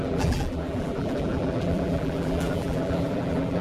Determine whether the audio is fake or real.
fake